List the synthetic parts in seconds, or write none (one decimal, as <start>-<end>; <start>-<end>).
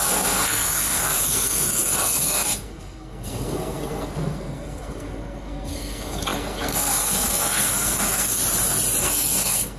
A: 0.0-8.4; 9.0-9.8